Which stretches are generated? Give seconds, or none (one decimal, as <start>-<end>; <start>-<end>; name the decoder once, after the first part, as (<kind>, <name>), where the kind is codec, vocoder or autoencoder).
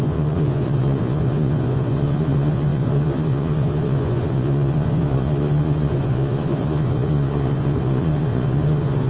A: 0.0-9.1 (vocoder, Vocos)